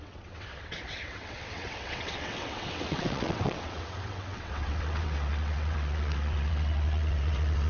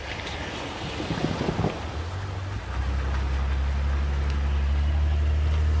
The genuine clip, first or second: second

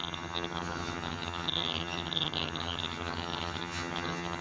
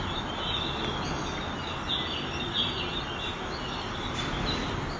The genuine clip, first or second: second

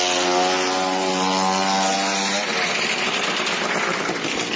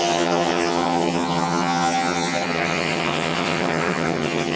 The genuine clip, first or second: first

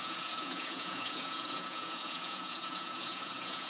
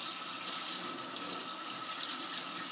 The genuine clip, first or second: second